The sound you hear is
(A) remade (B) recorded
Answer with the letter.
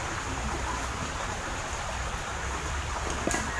B